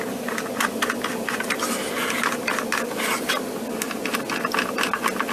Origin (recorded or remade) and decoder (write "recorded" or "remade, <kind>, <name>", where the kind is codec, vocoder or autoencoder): recorded